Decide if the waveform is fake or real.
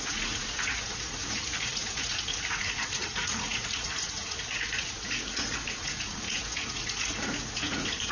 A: fake